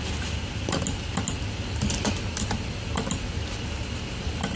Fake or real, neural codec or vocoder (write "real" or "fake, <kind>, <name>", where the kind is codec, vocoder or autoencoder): real